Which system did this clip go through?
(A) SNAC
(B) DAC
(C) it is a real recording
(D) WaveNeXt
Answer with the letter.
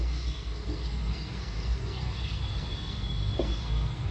A